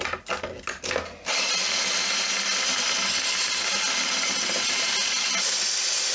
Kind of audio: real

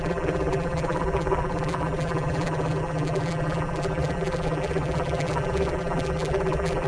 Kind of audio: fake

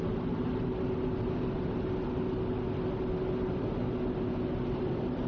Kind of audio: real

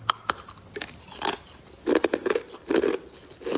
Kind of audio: real